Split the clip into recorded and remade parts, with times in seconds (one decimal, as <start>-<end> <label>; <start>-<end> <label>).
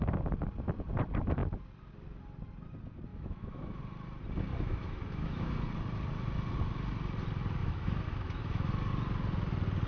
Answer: 0.0-3.1 recorded; 3.1-3.8 remade; 3.8-4.5 recorded; 4.5-5.5 remade; 5.5-7.6 recorded; 7.6-8.7 remade; 8.7-9.9 recorded